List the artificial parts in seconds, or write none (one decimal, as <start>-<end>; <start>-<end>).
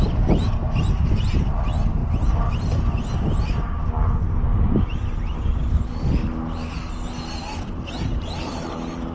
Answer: 4.5-6.1